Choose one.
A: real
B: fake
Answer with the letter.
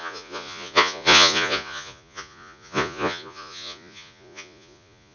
B